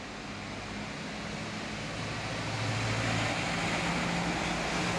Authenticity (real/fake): real